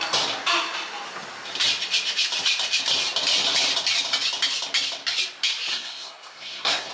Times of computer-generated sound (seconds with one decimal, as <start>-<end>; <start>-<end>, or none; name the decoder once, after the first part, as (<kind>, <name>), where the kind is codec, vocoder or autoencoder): 5.7-6.9 (codec, SNAC)